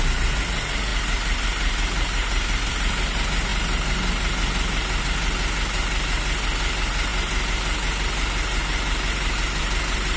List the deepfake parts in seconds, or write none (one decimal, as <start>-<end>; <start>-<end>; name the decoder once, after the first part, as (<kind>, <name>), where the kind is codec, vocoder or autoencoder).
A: none

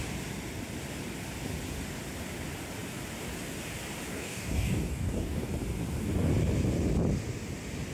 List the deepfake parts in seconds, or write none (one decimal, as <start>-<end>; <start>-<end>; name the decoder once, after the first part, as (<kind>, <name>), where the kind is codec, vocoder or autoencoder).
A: 4.1-5.5 (codec, DAC)

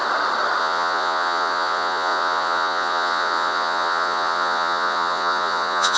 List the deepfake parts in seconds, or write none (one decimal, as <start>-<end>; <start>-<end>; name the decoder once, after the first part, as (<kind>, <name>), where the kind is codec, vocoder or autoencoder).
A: 0.6-6.0 (vocoder, Vocos)

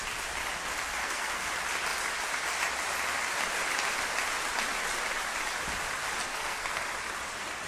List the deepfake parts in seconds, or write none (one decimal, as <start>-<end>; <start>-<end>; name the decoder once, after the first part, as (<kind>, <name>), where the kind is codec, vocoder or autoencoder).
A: 1.0-1.5 (codec, SNAC); 6.3-6.8

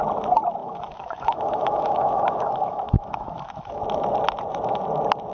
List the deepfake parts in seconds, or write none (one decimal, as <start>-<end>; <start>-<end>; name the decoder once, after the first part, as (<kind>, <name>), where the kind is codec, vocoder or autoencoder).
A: 0.6-3.8 (autoencoder, DAC-VAE)

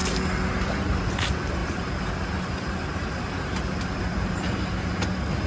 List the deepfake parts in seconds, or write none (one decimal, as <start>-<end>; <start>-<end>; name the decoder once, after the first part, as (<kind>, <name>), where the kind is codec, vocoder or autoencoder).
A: 1.6-4.9 (vocoder, BigVGAN v2)

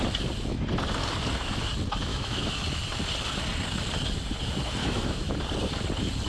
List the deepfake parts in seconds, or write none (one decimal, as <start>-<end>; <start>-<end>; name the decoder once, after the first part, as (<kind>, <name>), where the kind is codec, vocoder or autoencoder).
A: 2.1-2.6 (autoencoder, DAC-VAE); 4.8-5.3

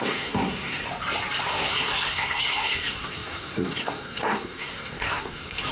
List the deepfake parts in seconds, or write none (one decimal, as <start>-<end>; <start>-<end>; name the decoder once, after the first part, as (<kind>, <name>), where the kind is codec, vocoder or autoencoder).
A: 0.0-0.8 (codec, SNAC); 1.4-5.7